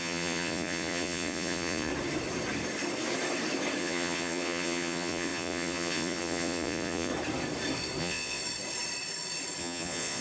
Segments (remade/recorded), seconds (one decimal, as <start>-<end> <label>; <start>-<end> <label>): 0.0-1.9 remade; 1.9-3.8 recorded; 3.8-7.1 remade; 7.1-8.0 recorded; 8.0-8.4 remade; 8.4-9.6 recorded; 9.6-10.2 remade